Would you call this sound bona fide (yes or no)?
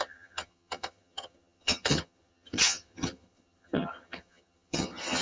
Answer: no